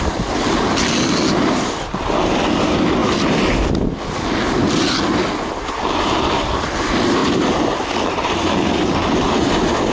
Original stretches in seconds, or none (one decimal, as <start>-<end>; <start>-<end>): 0.0-9.9

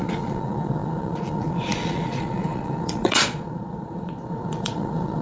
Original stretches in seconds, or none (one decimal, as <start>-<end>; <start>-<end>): none

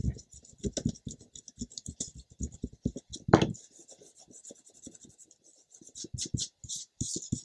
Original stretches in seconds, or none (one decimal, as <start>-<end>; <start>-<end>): 0.0-7.4

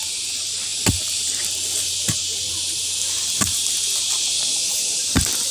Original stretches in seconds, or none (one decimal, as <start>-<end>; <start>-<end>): 0.0-5.5